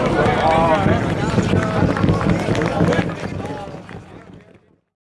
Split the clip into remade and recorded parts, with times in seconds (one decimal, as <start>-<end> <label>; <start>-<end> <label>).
0.0-5.2 recorded